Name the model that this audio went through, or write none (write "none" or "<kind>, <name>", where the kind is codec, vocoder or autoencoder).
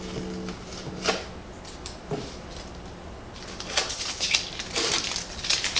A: none